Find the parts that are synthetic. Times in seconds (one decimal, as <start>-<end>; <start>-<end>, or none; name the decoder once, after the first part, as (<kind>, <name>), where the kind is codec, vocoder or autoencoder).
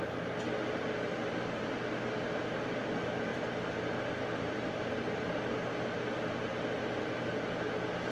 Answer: none